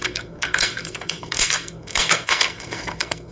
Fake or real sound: fake